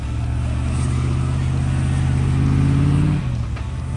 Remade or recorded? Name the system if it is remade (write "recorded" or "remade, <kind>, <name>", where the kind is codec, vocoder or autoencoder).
recorded